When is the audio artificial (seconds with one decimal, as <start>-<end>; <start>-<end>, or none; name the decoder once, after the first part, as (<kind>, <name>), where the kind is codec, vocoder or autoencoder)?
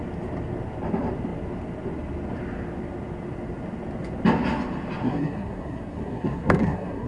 5.0-7.1 (codec, SNAC)